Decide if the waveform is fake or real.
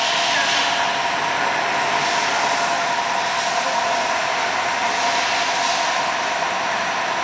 real